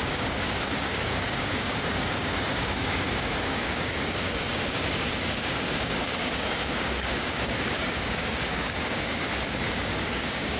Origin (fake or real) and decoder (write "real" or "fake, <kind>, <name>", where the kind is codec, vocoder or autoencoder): fake, codec, DAC